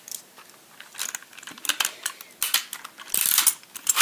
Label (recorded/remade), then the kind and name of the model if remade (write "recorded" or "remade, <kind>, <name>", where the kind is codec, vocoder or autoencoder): recorded